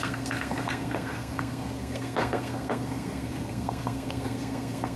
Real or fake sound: fake